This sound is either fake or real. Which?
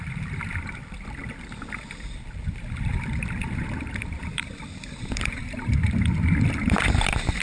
fake